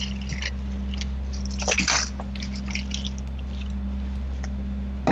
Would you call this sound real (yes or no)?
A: yes